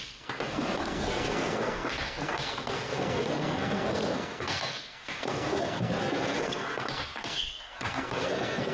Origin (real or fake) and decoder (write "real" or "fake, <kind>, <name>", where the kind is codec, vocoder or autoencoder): fake, codec, SNAC